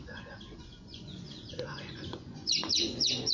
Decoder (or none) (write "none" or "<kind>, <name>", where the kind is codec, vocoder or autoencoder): vocoder, Vocos